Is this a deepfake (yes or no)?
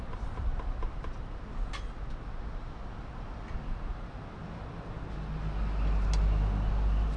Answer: no